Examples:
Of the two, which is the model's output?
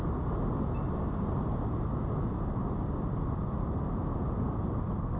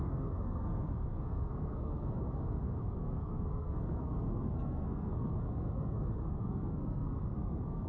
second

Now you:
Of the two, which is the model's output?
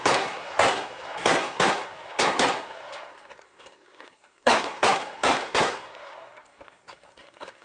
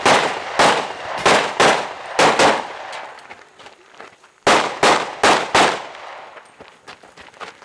first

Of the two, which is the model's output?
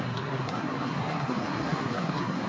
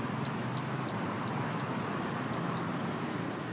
first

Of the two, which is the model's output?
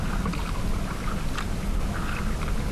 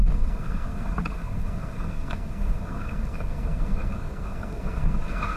second